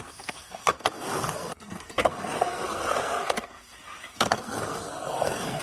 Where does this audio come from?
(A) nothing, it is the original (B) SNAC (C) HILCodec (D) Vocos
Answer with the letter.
B